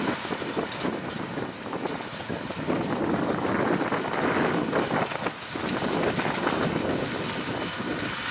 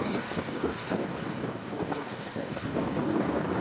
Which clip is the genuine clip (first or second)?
first